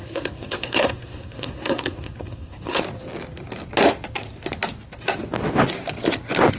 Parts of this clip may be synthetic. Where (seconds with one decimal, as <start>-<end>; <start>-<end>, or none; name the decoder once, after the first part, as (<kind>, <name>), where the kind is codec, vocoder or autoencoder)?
0.0-2.8 (codec, SNAC)